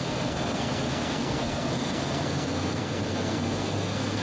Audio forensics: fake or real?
fake